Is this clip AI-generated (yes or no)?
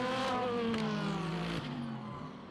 no